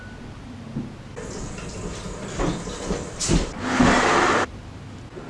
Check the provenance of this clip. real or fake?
real